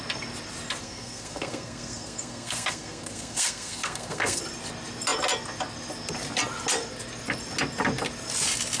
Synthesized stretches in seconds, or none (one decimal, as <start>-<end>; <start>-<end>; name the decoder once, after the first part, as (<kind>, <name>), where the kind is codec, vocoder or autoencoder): 0.8-4.4 (codec, SNAC)